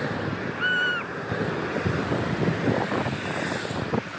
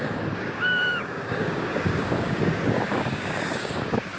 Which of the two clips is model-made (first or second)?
second